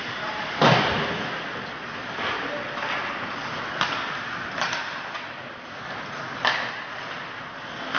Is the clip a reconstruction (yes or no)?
no